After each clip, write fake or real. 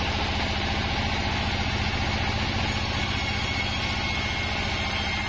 real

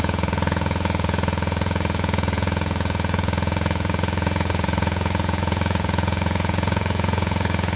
fake